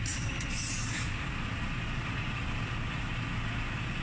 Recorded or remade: recorded